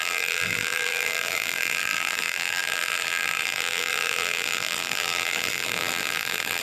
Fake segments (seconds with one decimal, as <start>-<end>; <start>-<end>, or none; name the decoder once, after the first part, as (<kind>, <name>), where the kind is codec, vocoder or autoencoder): 0.0-6.6 (vocoder, BigVGAN v2)